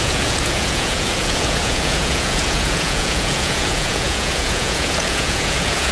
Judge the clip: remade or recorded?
remade